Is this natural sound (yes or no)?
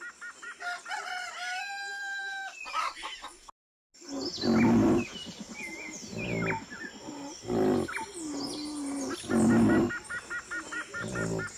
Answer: yes